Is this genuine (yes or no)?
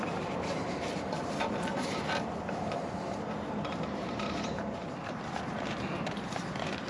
no